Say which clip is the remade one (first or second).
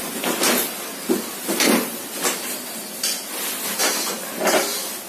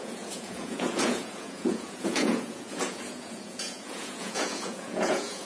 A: second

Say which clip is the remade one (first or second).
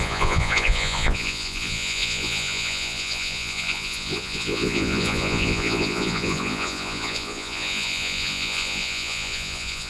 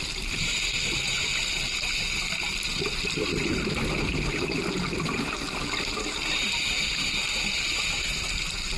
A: first